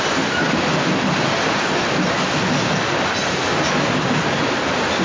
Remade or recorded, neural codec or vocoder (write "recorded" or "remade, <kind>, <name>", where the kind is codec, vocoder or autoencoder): recorded